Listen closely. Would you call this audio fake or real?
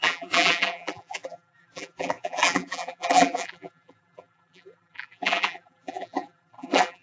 fake